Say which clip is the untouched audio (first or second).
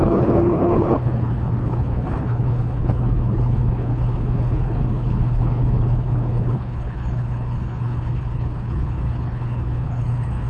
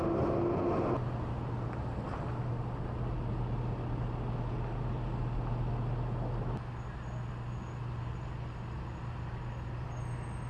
second